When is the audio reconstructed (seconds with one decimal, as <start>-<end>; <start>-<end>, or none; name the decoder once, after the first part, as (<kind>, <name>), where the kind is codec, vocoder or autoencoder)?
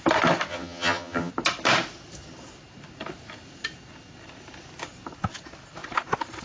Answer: 0.5-1.3 (vocoder, HiFi-GAN)